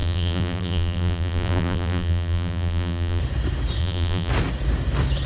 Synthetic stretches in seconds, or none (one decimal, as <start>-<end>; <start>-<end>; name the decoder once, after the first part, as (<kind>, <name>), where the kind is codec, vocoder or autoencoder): 0.0-3.2 (vocoder, BigVGAN v2); 3.8-4.3